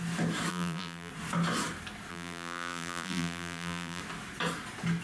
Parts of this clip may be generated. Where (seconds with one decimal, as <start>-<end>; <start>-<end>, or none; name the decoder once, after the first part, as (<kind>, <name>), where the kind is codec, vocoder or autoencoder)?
0.5-1.1 (vocoder, BigVGAN v2); 2.1-4.0